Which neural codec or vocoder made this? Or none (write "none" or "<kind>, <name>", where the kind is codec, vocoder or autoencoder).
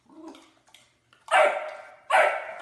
none